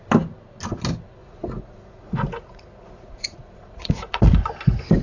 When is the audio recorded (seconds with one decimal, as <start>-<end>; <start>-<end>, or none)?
0.0-1.2; 4.2-5.0